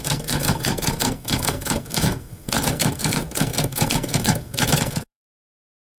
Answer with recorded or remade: remade